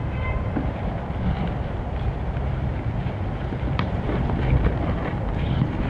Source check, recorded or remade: recorded